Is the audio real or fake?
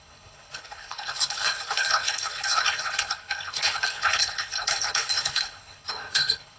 fake